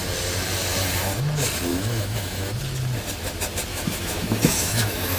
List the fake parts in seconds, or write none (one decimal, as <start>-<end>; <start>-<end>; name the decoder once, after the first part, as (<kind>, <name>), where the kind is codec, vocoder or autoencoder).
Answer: 1.7-2.6 (autoencoder, DAC-VAE); 3.7-5.2